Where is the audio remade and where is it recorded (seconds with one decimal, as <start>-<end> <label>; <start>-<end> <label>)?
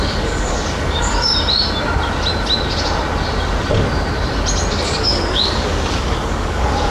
0.0-1.3 remade; 1.3-4.7 recorded; 4.7-6.9 remade